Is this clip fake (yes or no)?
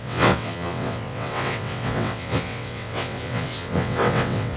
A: yes